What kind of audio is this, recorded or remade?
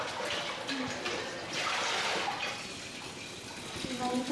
recorded